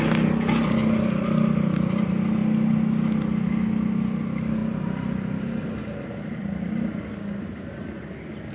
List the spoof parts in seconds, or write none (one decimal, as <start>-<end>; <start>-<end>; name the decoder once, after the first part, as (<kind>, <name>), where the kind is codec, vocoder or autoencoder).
none